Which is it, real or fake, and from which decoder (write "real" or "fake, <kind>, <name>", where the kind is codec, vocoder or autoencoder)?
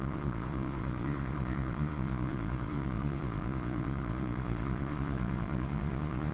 fake, vocoder, Vocos